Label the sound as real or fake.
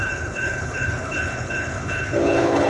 fake